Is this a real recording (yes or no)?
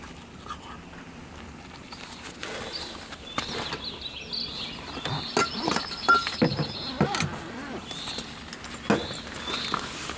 yes